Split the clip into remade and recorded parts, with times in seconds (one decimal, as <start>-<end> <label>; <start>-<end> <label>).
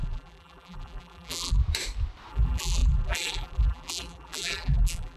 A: 0.0-1.6 remade; 1.6-2.3 recorded; 2.3-5.2 remade